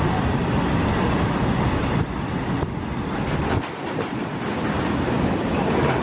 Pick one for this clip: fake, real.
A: real